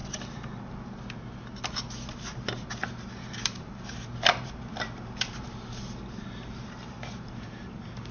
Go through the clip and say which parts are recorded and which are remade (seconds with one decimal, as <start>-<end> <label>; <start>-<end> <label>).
0.0-2.8 recorded; 2.8-8.1 remade